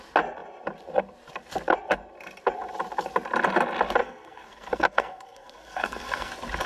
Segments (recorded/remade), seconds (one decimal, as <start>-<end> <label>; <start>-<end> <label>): 0.0-4.0 recorded; 4.0-6.3 remade; 6.3-6.7 recorded